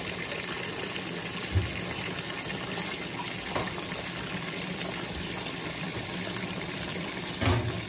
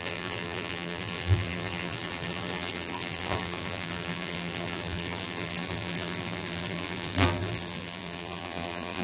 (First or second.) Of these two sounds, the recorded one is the first